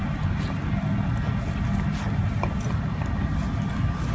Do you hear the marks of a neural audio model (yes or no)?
no